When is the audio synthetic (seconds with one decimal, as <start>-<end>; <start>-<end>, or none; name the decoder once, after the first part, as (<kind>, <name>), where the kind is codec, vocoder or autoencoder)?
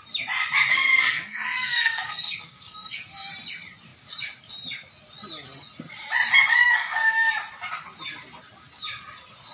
0.7-3.3 (codec, SNAC); 6.6-7.3